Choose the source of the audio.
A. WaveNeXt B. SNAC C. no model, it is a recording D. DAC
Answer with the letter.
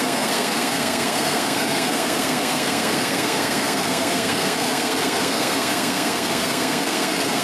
B